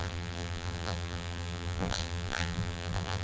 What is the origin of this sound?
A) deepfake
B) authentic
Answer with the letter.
A